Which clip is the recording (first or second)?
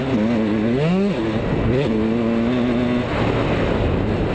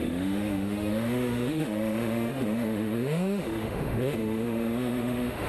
first